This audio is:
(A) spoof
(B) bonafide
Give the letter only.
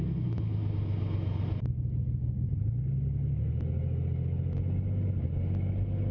B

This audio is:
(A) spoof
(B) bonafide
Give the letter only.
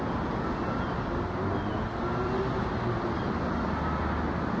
B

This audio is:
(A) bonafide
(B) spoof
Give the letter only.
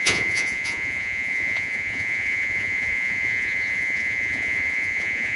B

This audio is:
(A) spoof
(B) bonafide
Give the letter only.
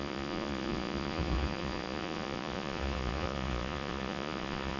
A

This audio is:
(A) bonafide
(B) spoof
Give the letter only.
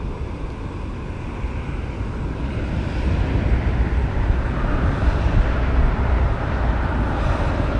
A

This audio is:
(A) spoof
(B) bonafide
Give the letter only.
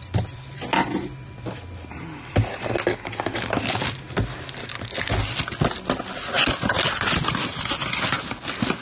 B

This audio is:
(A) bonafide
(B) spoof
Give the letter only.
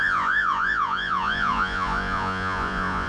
B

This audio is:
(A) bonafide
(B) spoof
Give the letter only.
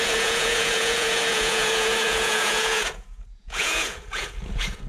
B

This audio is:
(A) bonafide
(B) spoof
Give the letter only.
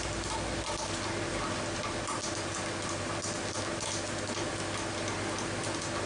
A